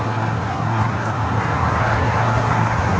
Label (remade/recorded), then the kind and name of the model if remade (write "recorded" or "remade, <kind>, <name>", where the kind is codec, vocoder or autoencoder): remade, codec, SNAC